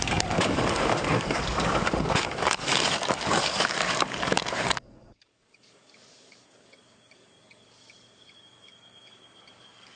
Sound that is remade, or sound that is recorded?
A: remade